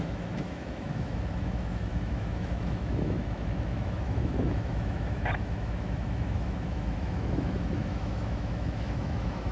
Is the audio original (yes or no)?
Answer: no